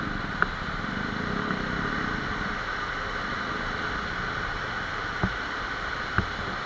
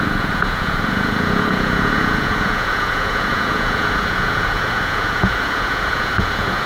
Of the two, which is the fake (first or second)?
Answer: second